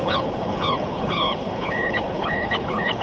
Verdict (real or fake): fake